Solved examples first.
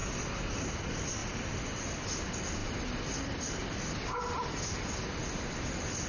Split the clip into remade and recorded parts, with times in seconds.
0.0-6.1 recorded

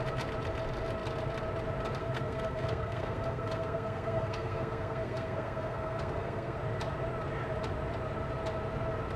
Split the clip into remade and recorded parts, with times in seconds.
0.0-2.0 recorded; 2.0-6.6 remade; 6.6-9.2 recorded